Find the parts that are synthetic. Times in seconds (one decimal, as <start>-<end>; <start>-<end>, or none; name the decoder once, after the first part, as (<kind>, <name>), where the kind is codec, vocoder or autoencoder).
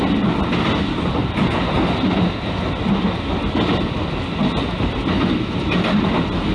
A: 1.2-1.7 (vocoder, BigVGAN v2)